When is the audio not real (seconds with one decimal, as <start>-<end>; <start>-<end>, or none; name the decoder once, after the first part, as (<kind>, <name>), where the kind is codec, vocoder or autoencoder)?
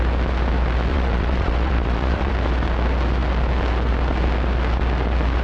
0.9-2.3 (vocoder, Vocos)